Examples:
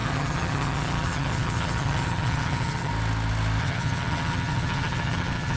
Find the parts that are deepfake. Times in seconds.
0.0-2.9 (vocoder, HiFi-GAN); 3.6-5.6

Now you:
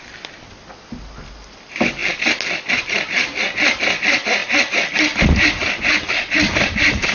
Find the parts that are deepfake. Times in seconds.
none

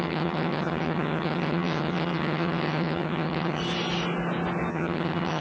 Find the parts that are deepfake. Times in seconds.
0.0-3.6 (vocoder, HiFi-GAN); 4.7-5.4

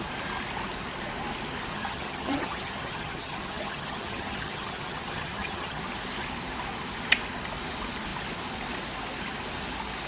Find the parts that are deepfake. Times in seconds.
1.7-5.8 (vocoder, HiFi-GAN)